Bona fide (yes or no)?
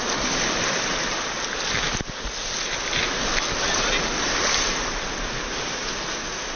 yes